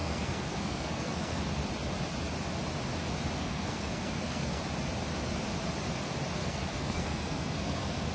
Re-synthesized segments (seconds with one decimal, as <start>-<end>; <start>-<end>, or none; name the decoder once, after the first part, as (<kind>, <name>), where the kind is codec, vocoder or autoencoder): 0.0-1.4 (codec, SNAC); 3.4-4.6; 6.4-8.1